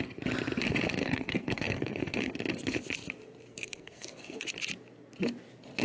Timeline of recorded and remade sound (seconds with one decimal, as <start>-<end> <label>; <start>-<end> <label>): 0.0-1.0 recorded; 1.0-2.3 remade; 2.3-3.5 recorded; 3.5-4.5 remade; 4.5-5.8 recorded